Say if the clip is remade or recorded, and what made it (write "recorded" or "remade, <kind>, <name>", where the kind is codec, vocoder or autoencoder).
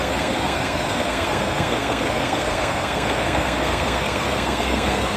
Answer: remade, codec, SNAC